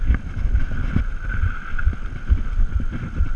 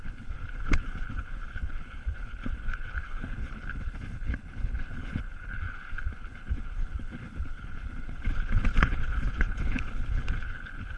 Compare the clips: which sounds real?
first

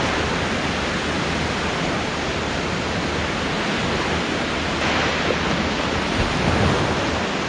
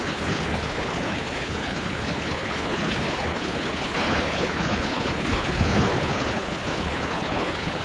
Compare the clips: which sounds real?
first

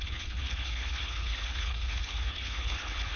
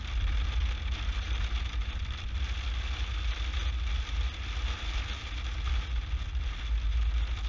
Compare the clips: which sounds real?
second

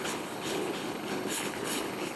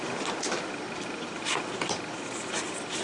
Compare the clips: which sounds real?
second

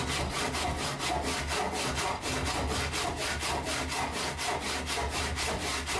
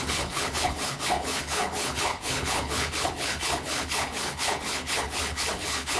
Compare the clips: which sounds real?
first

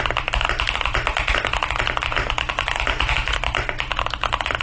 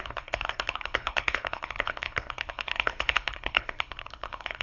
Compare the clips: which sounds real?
first